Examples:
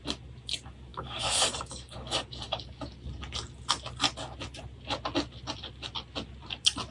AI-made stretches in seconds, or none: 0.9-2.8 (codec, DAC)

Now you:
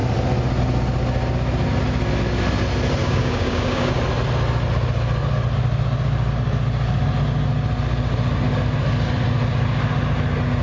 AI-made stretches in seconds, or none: 3.0-4.0 (codec, DAC)

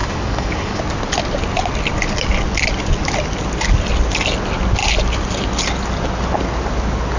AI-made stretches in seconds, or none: 0.0-0.8 (codec, DAC)

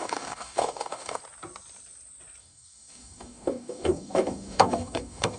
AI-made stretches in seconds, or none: 0.0-1.2 (codec, DAC); 2.4-5.4

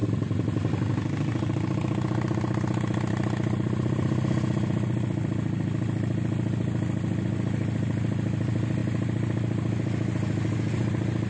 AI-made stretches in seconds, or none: none

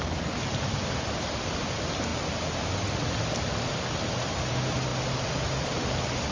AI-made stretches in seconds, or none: none